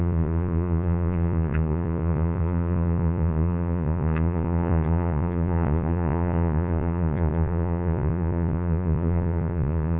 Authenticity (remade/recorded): remade